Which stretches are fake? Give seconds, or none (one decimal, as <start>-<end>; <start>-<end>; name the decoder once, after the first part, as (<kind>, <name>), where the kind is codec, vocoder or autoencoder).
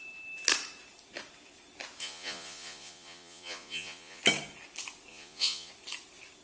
2.0-4.2 (vocoder, Vocos); 5.1-5.7